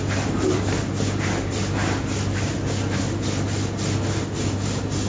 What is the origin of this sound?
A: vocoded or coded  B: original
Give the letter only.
A